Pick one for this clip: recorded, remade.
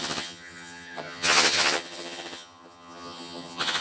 remade